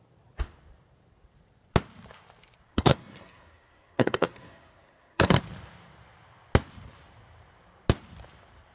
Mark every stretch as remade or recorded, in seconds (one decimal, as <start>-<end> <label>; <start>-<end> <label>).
0.0-2.7 recorded; 2.7-5.4 remade; 5.4-8.7 recorded